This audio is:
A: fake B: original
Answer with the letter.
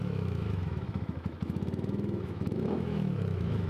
A